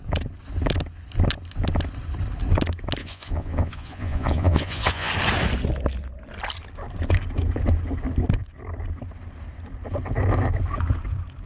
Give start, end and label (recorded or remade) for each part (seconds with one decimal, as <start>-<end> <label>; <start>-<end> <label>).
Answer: 0.0-3.0 recorded; 3.0-5.1 remade; 5.1-11.5 recorded